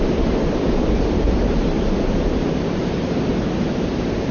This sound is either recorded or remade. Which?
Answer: remade